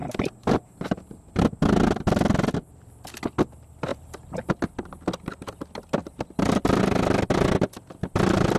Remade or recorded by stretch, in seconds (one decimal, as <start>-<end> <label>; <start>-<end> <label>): 0.0-1.4 remade; 1.4-3.9 recorded; 3.9-4.5 remade; 4.5-8.6 recorded